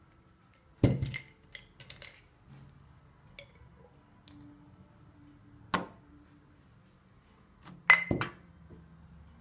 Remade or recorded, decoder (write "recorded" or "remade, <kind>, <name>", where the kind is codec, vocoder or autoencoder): recorded